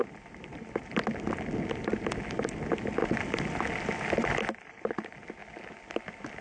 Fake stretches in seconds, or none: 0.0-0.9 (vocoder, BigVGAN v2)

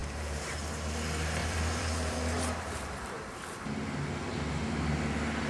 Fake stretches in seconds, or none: 0.0-0.6 (vocoder, BigVGAN v2); 1.4-2.8